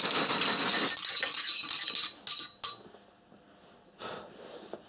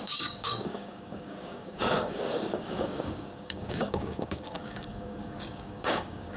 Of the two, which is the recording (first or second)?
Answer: first